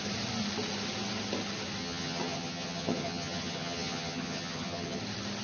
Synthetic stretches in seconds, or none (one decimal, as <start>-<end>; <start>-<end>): 1.8-5.0